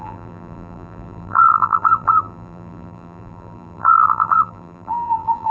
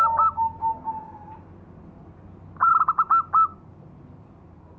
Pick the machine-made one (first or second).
first